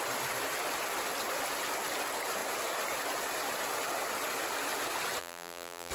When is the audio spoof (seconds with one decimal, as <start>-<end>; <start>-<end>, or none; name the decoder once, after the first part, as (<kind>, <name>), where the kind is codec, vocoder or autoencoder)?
5.2-5.9 (vocoder, BigVGAN v2)